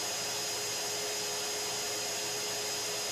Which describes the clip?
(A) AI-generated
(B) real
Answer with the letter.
B